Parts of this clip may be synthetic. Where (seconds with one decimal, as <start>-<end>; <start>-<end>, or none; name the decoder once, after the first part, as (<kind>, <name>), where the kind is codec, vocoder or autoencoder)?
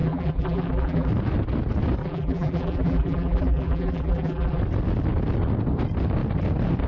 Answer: 0.0-1.1 (vocoder, BigVGAN v2); 2.0-4.6